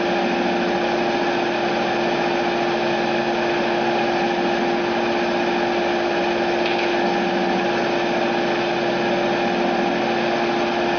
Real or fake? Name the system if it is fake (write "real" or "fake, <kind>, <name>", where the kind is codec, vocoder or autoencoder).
real